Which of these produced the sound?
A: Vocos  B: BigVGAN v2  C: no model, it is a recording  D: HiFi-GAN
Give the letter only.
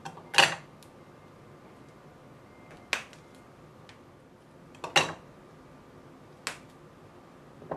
C